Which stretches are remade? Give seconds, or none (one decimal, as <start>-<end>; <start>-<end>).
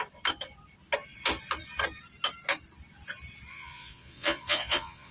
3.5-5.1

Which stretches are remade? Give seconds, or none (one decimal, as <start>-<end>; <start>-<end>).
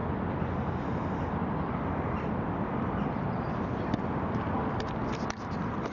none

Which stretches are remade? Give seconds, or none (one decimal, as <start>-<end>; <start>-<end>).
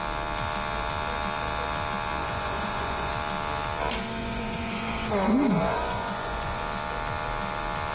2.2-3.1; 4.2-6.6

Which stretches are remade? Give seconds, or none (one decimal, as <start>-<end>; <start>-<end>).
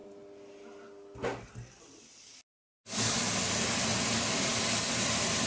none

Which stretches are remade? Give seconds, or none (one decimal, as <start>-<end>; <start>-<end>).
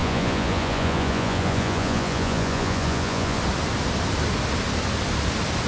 0.0-3.4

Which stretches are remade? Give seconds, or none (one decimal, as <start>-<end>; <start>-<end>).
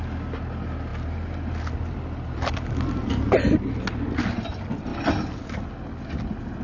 none